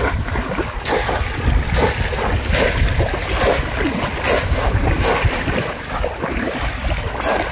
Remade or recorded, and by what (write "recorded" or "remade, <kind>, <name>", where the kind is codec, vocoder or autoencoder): recorded